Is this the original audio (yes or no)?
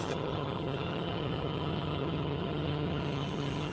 no